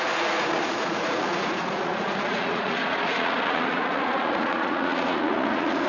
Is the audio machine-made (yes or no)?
yes